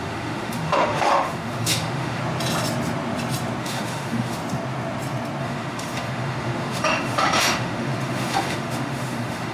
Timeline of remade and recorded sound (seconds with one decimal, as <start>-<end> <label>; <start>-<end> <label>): 0.0-2.2 remade; 2.2-3.6 recorded; 3.6-4.4 remade; 4.4-5.4 recorded; 5.4-9.5 remade